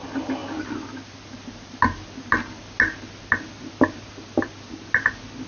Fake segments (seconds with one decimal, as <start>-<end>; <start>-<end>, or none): none